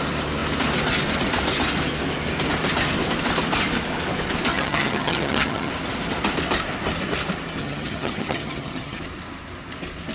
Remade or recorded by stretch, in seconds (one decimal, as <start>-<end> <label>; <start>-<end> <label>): 0.0-4.5 recorded; 4.5-5.7 remade; 5.7-7.6 recorded; 7.6-9.0 remade; 9.0-10.1 recorded